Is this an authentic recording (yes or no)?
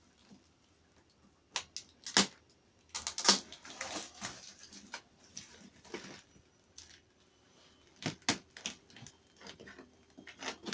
yes